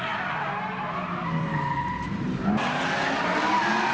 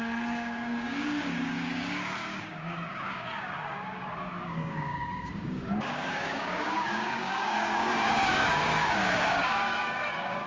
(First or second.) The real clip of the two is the first